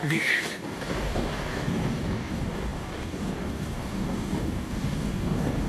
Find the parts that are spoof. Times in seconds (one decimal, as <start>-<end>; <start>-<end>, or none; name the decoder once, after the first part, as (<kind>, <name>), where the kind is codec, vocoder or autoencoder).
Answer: 0.0-5.7 (codec, DAC)